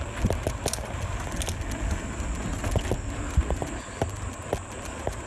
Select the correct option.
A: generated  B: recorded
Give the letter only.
B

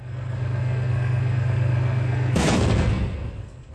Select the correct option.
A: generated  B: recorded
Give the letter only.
A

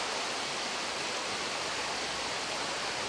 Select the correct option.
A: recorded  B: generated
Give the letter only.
A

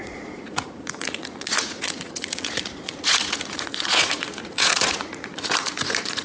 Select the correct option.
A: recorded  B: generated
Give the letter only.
B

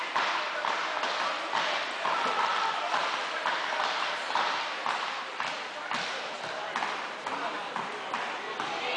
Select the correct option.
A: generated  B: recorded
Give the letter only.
B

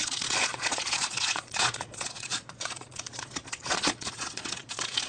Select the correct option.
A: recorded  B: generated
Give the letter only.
B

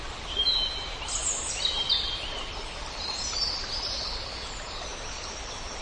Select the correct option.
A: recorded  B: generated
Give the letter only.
A